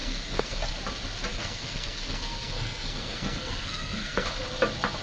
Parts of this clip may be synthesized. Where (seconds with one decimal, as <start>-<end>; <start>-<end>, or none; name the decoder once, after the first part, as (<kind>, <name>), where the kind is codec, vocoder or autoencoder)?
0.0-0.7 (codec, SNAC); 1.3-4.3